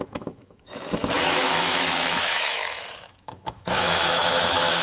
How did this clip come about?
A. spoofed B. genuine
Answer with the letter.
A